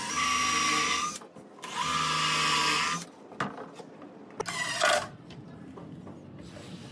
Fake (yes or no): no